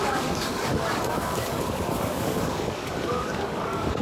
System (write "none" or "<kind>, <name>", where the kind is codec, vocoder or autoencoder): codec, DAC